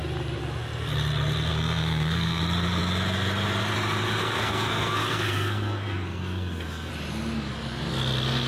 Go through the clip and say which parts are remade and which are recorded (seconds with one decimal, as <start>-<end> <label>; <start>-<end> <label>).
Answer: 0.0-1.5 recorded; 1.5-2.4 remade; 2.4-4.2 recorded; 4.2-6.9 remade; 6.9-8.5 recorded

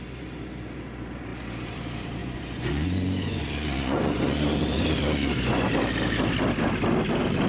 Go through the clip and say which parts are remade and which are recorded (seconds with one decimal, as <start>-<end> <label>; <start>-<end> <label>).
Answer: 0.0-2.2 recorded; 2.2-5.7 remade; 5.7-7.5 recorded

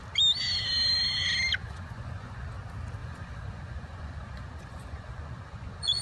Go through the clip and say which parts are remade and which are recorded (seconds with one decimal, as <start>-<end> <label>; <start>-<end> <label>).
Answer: 0.0-1.6 recorded; 1.6-2.5 remade; 2.5-3.0 recorded; 3.0-6.0 remade

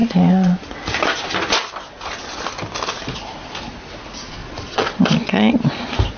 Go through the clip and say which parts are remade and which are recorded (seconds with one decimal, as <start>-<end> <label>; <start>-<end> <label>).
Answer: 0.0-0.7 remade; 0.7-4.4 recorded; 4.4-4.9 remade; 4.9-6.2 recorded

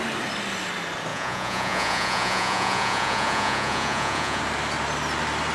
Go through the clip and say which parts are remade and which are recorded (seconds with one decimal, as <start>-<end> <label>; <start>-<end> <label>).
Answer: 0.0-1.1 recorded; 1.1-4.4 remade; 4.4-5.5 recorded

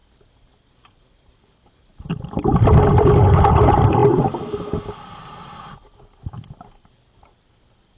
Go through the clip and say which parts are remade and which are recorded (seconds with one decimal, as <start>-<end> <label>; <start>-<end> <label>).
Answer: 0.0-8.0 recorded

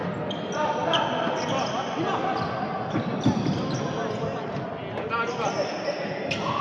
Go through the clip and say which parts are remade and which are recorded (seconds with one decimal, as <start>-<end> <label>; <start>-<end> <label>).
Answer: 0.0-6.6 recorded